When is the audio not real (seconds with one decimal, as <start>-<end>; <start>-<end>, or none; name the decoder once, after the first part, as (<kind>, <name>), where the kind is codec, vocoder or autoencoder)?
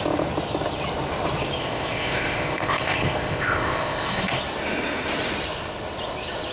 1.6-4.4 (codec, ZipCodec)